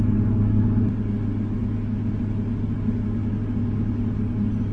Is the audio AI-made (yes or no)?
no